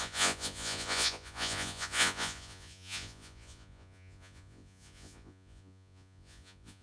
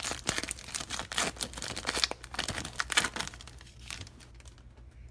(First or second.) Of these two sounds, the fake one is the first